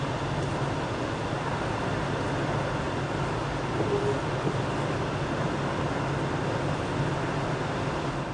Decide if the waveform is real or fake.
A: real